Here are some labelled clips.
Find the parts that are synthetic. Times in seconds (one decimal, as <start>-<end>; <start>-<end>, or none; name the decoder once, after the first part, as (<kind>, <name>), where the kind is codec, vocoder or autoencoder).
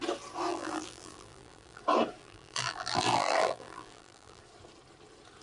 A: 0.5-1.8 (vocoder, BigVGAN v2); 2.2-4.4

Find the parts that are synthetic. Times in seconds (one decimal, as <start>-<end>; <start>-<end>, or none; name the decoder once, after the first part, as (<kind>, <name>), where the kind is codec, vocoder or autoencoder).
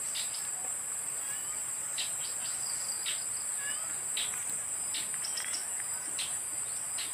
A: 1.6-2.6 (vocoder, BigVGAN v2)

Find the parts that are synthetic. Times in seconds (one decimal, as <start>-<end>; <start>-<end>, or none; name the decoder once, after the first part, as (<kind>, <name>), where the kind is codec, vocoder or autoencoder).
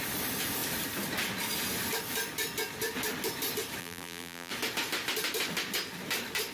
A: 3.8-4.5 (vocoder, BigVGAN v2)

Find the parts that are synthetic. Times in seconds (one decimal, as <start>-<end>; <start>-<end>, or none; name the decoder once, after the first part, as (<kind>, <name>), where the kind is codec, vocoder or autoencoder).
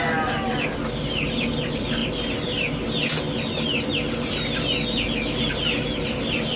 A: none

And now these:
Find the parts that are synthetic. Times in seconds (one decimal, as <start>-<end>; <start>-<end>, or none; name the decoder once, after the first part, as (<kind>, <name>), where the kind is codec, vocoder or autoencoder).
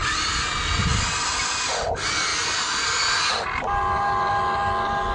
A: none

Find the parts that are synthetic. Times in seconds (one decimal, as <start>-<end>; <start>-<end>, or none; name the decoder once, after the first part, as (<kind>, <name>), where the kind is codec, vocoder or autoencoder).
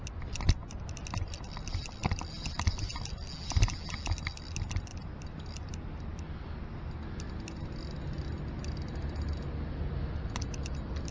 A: none